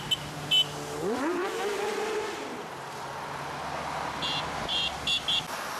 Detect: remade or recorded recorded